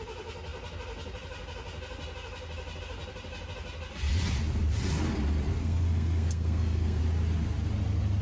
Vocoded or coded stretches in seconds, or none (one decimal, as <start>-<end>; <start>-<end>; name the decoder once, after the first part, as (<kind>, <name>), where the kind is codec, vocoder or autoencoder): 5.6-7.0 (codec, SNAC)